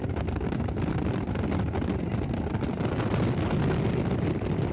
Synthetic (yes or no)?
no